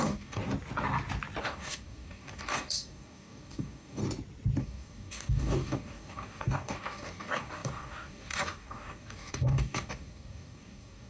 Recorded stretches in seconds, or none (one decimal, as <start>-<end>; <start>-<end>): 0.4-1.4; 4.0-4.6